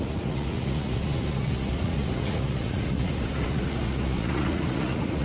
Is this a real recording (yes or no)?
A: no